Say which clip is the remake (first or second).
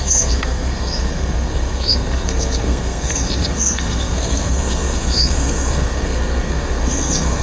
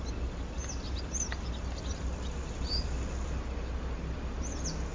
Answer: first